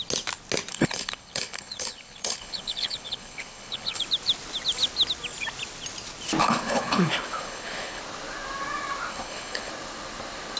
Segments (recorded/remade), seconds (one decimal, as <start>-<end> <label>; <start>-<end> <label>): 0.0-0.7 recorded; 0.7-4.0 remade; 4.0-6.4 recorded; 6.4-8.0 remade; 8.0-9.1 recorded; 9.1-9.7 remade; 9.7-10.6 recorded